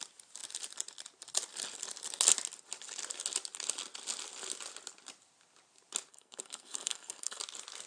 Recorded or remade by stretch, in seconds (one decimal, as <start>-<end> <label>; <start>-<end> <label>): 0.0-6.1 recorded; 6.1-7.4 remade; 7.4-7.9 recorded